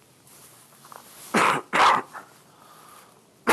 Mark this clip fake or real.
real